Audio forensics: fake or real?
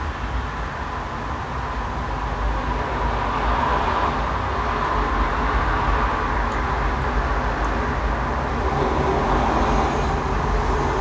real